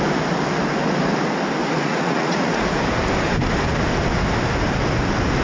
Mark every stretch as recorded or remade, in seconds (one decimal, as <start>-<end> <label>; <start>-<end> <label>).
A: 0.0-1.6 recorded; 1.6-2.8 remade; 2.8-5.4 recorded

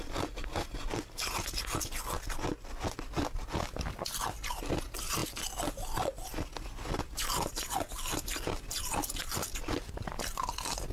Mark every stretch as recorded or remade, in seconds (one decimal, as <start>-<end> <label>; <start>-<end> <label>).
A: 0.0-10.9 recorded

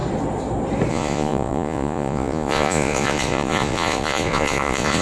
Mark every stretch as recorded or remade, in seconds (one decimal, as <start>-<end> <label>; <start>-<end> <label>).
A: 0.0-0.9 recorded; 0.9-5.0 remade

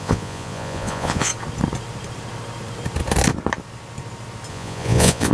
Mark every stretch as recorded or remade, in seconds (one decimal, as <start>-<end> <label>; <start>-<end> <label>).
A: 0.0-1.3 remade; 1.3-4.5 recorded; 4.5-5.3 remade

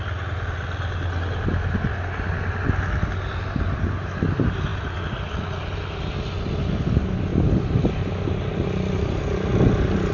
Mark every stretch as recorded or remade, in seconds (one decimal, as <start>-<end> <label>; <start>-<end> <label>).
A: 0.0-10.1 recorded

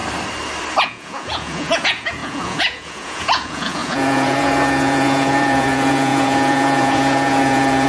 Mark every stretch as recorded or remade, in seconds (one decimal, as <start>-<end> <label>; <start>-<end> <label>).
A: 0.0-0.8 recorded; 0.8-7.9 remade

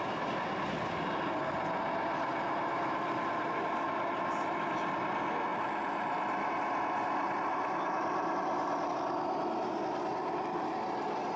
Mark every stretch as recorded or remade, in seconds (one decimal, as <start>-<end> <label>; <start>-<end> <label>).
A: 0.0-11.4 recorded

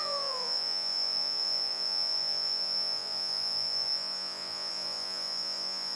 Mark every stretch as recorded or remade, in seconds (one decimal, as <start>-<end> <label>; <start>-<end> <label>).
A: 0.0-6.0 remade